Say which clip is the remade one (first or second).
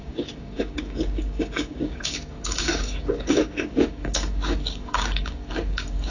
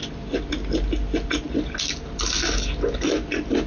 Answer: first